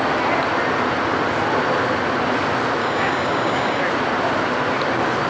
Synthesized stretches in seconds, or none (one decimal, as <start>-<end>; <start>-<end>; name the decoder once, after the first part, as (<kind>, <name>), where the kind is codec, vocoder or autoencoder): 2.8-3.8 (codec, DAC)